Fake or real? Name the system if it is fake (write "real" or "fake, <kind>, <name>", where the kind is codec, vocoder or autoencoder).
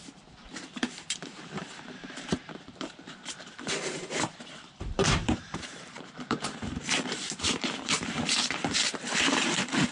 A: fake, vocoder, BigVGAN v2